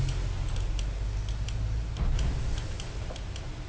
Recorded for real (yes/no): yes